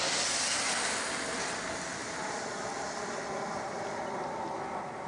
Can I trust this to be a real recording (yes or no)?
yes